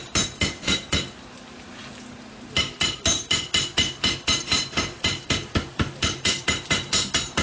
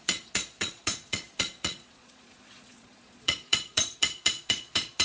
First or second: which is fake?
second